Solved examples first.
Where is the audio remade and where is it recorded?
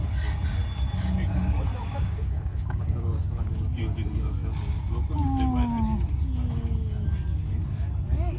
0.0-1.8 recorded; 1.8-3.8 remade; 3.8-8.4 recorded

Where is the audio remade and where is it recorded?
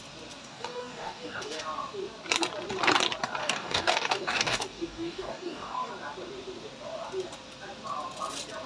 0.0-0.4 recorded; 0.4-1.6 remade; 1.6-3.4 recorded; 3.4-5.9 remade; 5.9-8.7 recorded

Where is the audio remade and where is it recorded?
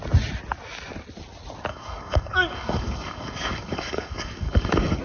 0.0-1.7 recorded; 1.7-5.0 remade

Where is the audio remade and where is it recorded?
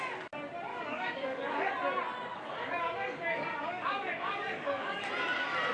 0.0-0.7 recorded; 0.7-1.7 remade; 1.7-2.3 recorded; 2.3-5.1 remade; 5.1-5.7 recorded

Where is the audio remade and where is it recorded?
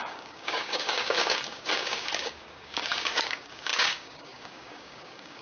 0.0-5.4 remade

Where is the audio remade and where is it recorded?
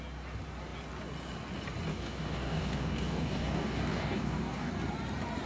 0.0-1.9 recorded; 1.9-4.7 remade; 4.7-5.5 recorded